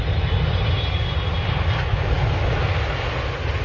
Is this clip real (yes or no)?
yes